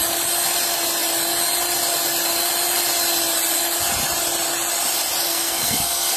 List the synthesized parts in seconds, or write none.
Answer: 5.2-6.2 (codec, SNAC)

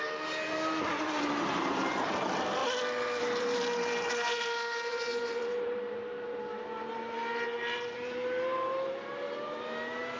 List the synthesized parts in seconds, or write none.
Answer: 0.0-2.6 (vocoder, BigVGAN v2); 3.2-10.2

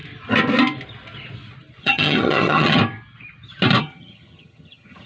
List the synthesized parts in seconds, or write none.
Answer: 1.8-2.8 (vocoder, HiFi-GAN); 3.8-5.1

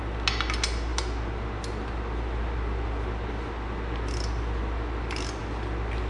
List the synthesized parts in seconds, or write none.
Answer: none

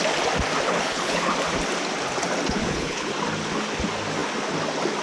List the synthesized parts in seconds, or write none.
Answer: 0.7-1.3 (codec, HILCodec); 2.6-3.1

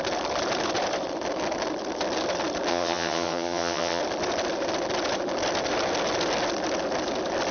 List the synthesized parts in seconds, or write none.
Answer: 2.7-4.0 (vocoder, HiFi-GAN)